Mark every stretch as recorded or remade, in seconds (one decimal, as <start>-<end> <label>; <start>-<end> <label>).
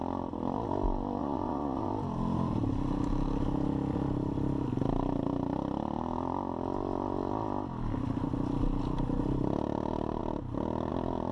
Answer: 0.0-1.2 recorded; 1.2-1.9 remade; 1.9-11.3 recorded